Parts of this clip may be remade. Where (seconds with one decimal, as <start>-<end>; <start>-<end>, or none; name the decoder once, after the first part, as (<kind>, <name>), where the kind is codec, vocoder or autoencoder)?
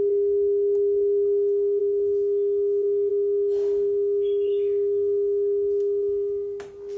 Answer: none